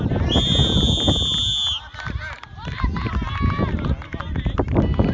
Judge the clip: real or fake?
real